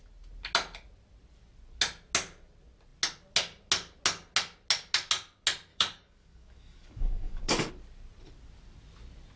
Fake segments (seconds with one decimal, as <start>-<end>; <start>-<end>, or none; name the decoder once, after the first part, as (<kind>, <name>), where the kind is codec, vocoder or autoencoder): 5.7-7.7 (codec, DAC)